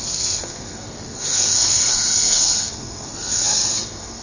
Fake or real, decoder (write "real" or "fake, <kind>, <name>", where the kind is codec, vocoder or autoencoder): fake, codec, SNAC